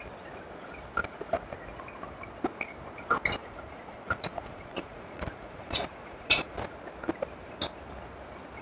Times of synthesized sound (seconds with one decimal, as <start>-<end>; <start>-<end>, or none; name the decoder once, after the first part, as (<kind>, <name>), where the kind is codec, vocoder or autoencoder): 3.4-6.7 (vocoder, Vocos)